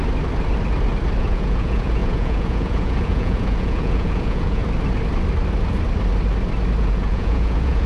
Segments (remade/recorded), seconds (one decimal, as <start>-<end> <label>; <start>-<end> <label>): 0.0-1.2 recorded; 1.2-4.6 remade; 4.6-6.8 recorded; 6.8-7.9 remade